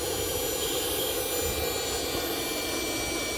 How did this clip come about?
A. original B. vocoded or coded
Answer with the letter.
A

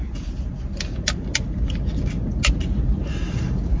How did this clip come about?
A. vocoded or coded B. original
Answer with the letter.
B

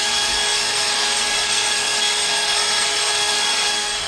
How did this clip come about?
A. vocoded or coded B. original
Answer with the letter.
A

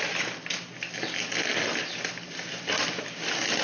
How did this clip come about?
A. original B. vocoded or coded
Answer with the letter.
A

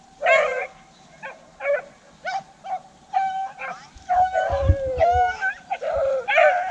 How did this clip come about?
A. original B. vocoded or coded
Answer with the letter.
A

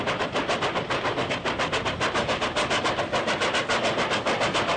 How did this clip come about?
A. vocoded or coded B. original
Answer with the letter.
B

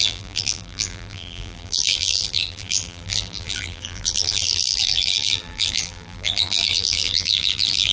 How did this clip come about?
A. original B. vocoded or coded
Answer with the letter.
B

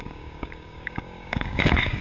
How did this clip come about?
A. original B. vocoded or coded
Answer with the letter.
B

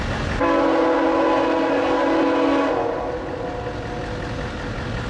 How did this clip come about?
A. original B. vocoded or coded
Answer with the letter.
A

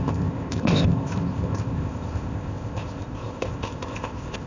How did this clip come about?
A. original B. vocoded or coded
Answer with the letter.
B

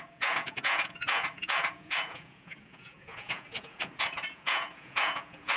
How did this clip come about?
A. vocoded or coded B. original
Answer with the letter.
A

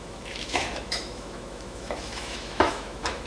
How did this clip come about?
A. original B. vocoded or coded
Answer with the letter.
B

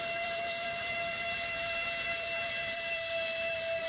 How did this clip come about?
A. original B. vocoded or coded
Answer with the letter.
B